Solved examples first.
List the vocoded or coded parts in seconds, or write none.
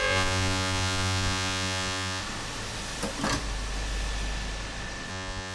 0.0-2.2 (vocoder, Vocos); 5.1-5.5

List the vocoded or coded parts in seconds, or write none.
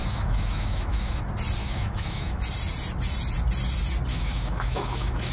0.0-1.2 (autoencoder, DAC-VAE); 1.6-2.4; 4.1-5.3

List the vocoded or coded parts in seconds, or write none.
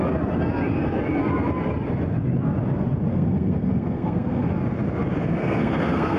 3.1-4.5 (codec, SNAC); 5.4-6.2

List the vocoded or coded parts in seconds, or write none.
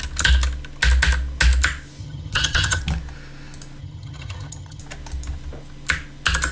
2.0-2.8 (vocoder, HiFi-GAN); 3.8-4.8